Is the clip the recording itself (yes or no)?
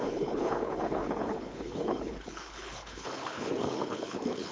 no